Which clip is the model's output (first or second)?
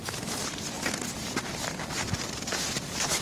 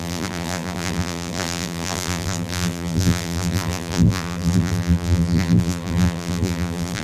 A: second